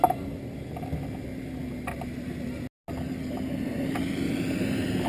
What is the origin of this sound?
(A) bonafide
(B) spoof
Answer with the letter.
A